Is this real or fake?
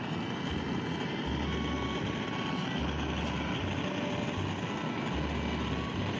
real